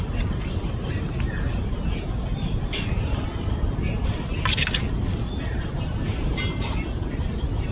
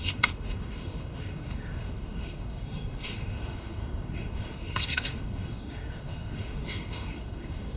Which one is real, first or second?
first